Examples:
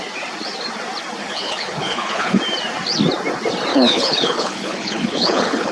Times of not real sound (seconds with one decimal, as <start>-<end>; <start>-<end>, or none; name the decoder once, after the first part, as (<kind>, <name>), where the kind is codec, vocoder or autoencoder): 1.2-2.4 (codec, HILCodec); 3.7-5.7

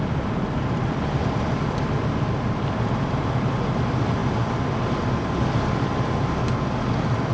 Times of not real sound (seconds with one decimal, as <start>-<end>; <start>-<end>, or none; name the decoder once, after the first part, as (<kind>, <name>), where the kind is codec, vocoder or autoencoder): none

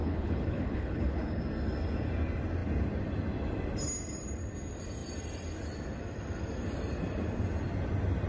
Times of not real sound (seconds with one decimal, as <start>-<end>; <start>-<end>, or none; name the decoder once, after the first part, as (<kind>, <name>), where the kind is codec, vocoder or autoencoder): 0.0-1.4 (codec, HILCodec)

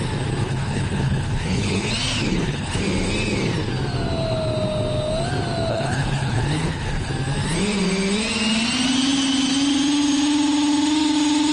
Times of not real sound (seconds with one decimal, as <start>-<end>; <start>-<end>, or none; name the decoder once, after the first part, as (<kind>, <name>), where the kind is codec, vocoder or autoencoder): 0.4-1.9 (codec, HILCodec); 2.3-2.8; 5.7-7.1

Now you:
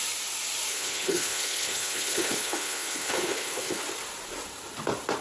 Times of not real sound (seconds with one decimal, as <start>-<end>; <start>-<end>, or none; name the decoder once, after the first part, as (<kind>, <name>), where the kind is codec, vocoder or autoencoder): 0.7-3.8 (codec, HILCodec)